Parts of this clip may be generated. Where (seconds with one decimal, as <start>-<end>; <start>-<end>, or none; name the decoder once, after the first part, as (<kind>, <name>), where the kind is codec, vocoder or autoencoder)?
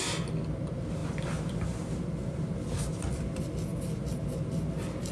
none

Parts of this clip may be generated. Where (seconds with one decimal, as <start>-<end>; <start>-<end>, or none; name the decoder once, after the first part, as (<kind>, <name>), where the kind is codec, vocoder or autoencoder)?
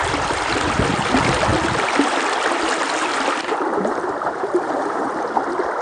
3.7-5.1 (vocoder, BigVGAN v2)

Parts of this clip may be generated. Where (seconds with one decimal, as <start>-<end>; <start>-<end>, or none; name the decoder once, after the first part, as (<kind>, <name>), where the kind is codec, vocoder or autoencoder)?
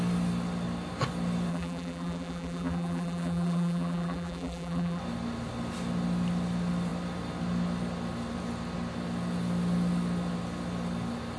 1.5-5.0 (vocoder, BigVGAN v2)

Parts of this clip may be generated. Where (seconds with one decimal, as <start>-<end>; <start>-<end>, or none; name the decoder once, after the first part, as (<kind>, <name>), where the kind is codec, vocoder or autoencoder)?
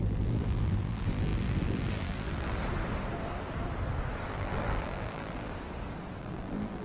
0.0-2.6 (vocoder, BigVGAN v2); 4.3-5.5; 6.2-6.8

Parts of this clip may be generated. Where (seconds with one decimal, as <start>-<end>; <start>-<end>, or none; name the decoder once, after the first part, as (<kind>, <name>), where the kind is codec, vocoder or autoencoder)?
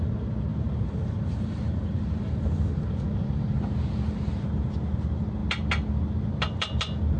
0.5-4.7 (vocoder, BigVGAN v2)